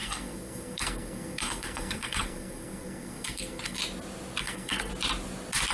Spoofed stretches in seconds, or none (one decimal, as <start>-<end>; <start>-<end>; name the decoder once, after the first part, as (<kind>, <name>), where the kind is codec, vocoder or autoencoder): 0.0-3.8 (codec, SNAC); 4.4-4.9